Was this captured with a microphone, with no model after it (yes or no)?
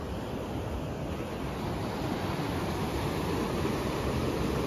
yes